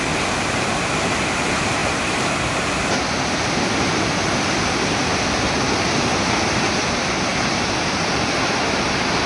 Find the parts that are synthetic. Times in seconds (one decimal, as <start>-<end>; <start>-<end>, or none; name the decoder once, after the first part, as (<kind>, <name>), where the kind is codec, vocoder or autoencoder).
none